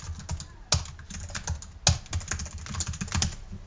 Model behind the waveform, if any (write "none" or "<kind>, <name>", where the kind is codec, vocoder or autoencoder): none